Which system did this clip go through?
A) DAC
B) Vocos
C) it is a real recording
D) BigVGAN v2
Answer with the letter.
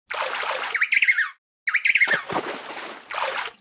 C